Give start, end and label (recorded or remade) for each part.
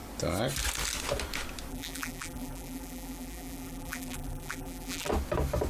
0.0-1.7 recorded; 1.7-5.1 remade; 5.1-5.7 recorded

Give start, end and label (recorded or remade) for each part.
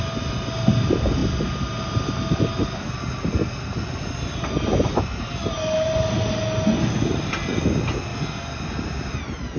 0.0-9.6 recorded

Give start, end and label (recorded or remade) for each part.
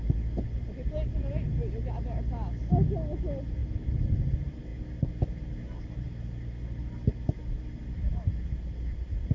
0.0-3.6 recorded; 3.6-4.3 remade; 4.3-9.3 recorded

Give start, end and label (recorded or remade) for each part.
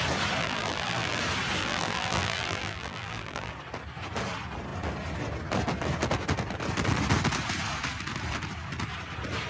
0.0-0.4 recorded; 0.4-1.2 remade; 1.2-1.6 recorded; 1.6-3.5 remade; 3.5-9.5 recorded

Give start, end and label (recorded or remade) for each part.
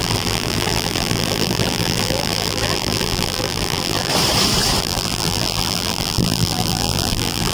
0.0-4.1 remade; 4.1-4.8 recorded; 4.8-7.5 remade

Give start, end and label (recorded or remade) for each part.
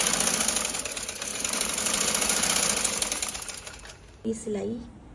0.0-1.3 recorded; 1.3-3.8 remade; 3.8-5.1 recorded